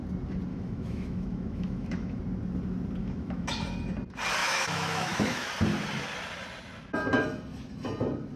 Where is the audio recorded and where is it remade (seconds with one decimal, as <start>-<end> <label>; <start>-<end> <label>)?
0.0-0.5 recorded; 0.5-2.2 remade; 2.2-3.0 recorded; 3.0-3.5 remade; 3.5-4.4 recorded; 4.4-5.5 remade; 5.5-8.4 recorded